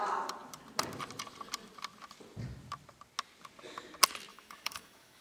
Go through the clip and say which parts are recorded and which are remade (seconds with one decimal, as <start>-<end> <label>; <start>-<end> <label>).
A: 0.0-4.3 recorded; 4.3-5.2 remade